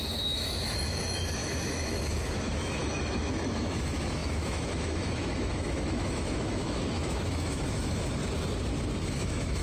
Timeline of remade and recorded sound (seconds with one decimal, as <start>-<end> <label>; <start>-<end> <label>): 0.0-8.2 remade; 8.2-9.0 recorded; 9.0-9.6 remade